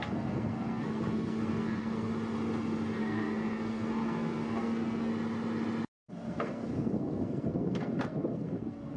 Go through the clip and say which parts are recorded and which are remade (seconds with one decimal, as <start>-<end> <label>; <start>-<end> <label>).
0.0-2.1 remade; 2.1-3.0 recorded; 3.0-5.1 remade; 5.1-6.1 recorded; 6.1-9.0 remade